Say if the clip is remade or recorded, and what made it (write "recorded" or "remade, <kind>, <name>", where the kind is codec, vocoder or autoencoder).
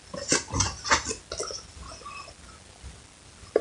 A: recorded